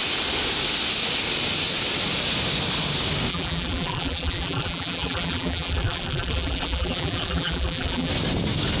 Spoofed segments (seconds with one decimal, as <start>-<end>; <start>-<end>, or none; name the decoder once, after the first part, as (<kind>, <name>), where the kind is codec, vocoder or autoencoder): 3.3-8.1 (vocoder, BigVGAN v2)